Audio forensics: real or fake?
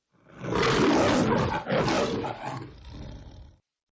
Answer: real